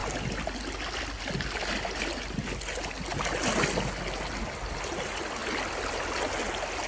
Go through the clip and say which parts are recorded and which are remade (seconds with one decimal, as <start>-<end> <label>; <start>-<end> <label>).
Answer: 0.0-6.9 recorded